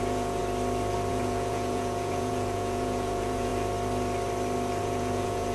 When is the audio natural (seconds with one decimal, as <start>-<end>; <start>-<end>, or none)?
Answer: 0.4-1.1; 3.5-4.8